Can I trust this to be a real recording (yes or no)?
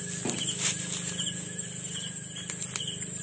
yes